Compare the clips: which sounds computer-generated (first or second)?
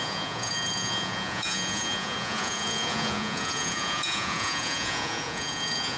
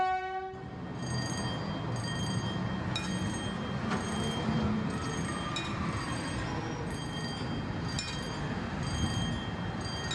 first